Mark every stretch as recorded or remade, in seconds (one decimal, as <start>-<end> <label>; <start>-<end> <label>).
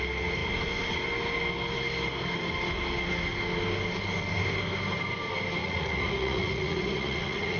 0.0-5.6 recorded; 5.6-7.6 remade